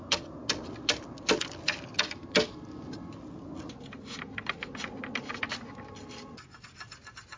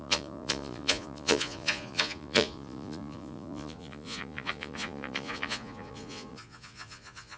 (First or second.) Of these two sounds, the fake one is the second